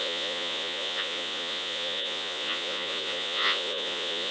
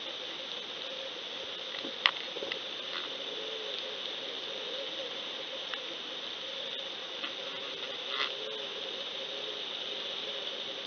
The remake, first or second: first